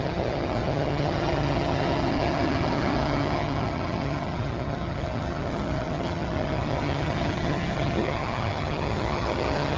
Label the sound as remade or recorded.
remade